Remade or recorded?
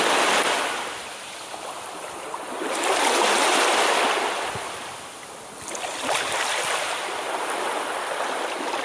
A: recorded